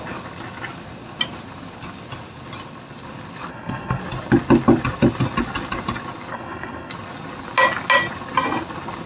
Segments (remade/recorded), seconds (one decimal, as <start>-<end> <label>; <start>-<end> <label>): 0.0-3.5 recorded; 3.5-4.0 remade; 4.0-6.3 recorded; 6.3-6.9 remade; 6.9-9.1 recorded